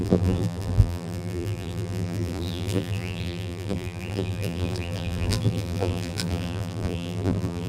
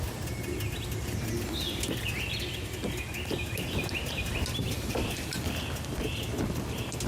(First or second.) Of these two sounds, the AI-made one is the first